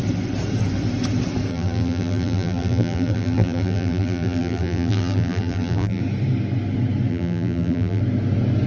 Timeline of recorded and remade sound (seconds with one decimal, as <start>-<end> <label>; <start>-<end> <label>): 0.0-1.5 recorded; 1.5-6.0 remade; 6.0-7.1 recorded; 7.1-8.0 remade; 8.0-8.7 recorded